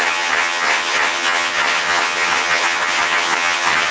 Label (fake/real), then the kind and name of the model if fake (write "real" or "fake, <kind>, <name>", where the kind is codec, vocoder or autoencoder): fake, vocoder, HiFi-GAN